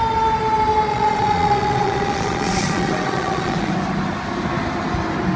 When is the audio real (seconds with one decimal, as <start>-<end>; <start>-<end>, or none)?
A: 0.0-0.9; 3.7-5.4